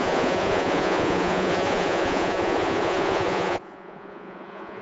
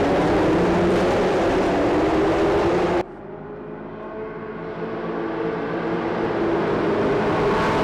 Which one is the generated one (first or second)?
first